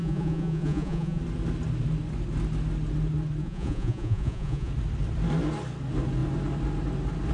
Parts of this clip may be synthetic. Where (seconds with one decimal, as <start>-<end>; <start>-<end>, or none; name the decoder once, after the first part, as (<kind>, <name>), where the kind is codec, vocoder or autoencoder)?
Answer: 0.0-1.2 (vocoder, Vocos); 3.4-4.7